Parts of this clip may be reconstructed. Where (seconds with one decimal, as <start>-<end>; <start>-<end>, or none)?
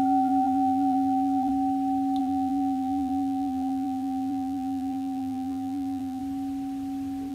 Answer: 0.0-1.5; 2.2-6.2